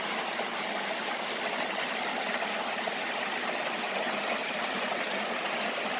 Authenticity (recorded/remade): recorded